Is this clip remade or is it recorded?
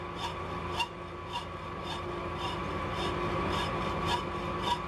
recorded